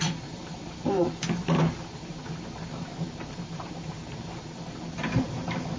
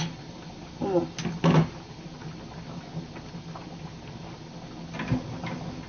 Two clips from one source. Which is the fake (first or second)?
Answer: first